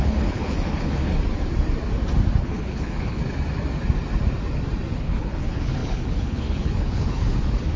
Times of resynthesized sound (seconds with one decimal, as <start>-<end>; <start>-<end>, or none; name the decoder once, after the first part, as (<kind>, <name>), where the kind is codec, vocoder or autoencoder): 0.0-1.1 (codec, HILCodec); 2.4-3.2; 4.9-7.8

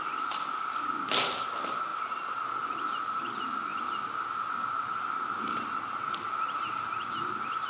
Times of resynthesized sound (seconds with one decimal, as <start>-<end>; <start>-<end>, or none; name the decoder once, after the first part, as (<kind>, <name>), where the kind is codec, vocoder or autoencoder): none

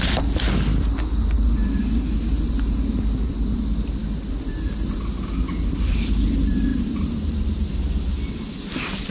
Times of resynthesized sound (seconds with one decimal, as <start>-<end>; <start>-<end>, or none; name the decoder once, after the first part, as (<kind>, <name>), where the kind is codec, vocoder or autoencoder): 6.7-7.7 (vocoder, BigVGAN v2)

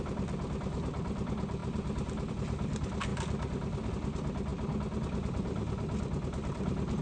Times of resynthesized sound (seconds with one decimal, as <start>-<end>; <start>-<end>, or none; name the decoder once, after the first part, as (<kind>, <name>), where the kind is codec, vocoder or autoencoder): none

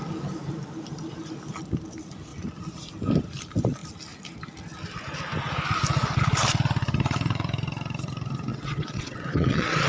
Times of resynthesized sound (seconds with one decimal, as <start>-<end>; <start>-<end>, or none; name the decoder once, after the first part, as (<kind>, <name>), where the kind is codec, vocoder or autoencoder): 8.5-9.9 (vocoder, WaveNeXt)

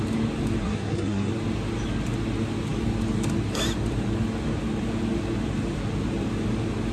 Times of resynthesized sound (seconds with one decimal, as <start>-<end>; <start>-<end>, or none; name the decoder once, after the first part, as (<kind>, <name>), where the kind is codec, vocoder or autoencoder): 0.6-1.3 (codec, SNAC)